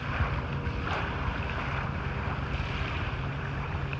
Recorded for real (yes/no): yes